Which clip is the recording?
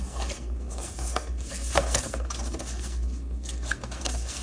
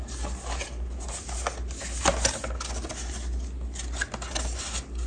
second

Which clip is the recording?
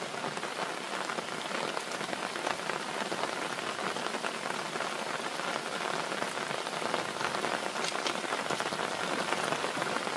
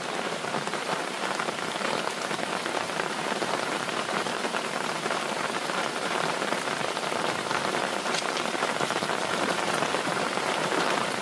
first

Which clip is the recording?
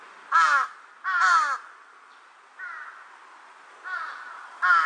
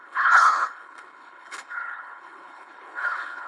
first